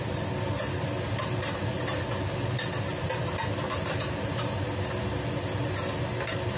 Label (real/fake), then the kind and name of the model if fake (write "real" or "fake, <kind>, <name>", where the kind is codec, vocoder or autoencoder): real